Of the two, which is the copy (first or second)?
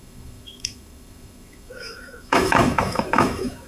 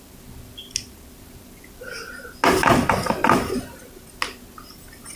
first